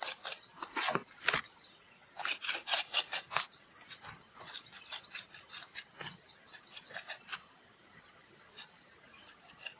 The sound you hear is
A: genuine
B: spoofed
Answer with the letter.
A